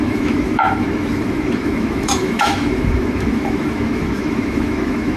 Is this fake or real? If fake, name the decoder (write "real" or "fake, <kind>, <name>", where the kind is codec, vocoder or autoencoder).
fake, autoencoder, DAC-VAE